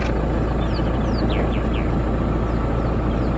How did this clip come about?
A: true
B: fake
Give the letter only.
A